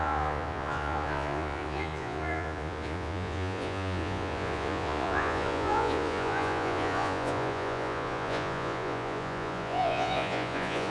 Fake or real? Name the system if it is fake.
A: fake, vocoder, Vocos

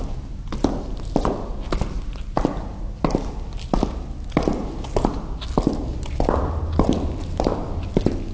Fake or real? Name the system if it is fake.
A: real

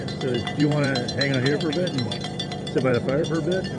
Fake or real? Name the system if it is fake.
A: fake, vocoder, BigVGAN v2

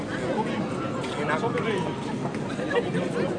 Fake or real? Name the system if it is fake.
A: real